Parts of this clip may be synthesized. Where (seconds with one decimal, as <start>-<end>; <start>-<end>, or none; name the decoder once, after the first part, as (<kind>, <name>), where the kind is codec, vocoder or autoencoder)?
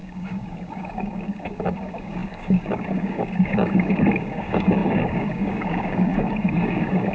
0.0-7.1 (codec, DAC)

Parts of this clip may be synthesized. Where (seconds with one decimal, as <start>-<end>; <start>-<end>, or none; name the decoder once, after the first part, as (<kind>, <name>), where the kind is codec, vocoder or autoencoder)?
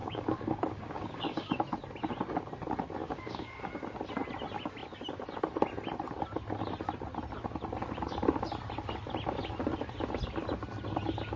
0.0-1.6 (codec, DAC); 3.0-3.6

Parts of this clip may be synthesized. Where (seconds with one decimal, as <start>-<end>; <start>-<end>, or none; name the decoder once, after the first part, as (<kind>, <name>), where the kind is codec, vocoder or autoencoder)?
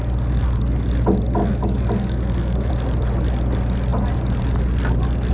1.4-2.7 (codec, DAC)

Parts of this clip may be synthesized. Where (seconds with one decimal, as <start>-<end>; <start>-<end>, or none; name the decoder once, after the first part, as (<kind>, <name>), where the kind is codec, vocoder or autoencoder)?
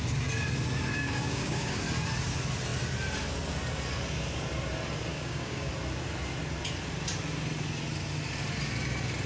0.9-1.8 (codec, DAC); 5.1-5.7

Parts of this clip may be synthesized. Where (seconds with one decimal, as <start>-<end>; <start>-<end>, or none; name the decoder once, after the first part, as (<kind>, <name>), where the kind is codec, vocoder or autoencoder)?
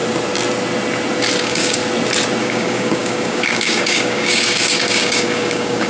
1.4-1.8 (codec, DAC); 2.4-5.9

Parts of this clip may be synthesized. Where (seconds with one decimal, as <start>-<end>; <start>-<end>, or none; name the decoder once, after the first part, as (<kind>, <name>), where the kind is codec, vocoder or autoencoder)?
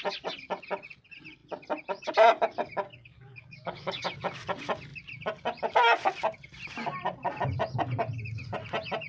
2.9-4.0 (codec, DAC)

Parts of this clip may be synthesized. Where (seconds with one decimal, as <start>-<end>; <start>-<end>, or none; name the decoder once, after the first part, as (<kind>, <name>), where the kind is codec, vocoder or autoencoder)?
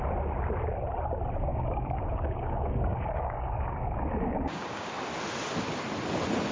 1.5-4.9 (codec, DAC)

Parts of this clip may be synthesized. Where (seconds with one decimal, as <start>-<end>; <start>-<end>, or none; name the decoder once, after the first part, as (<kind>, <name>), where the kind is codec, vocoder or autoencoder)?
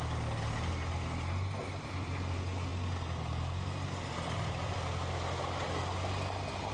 none